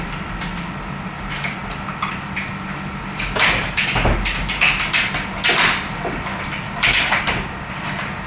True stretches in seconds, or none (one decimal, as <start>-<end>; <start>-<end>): 0.0-8.3